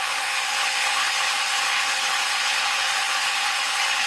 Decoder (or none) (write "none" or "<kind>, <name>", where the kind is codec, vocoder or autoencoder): codec, HILCodec